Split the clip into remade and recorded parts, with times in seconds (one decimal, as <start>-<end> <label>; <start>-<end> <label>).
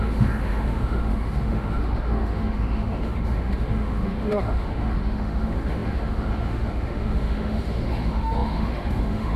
0.0-9.4 remade